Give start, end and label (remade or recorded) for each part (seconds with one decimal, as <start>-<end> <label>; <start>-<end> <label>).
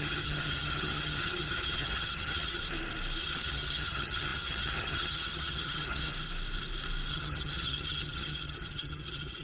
0.0-2.6 remade; 2.6-3.2 recorded; 3.2-6.1 remade; 6.1-7.1 recorded; 7.1-9.4 remade